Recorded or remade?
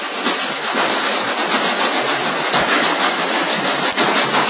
recorded